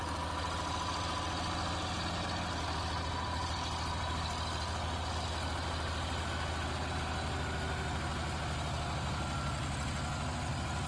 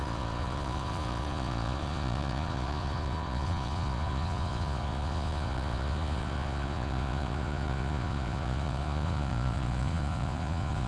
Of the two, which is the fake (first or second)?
second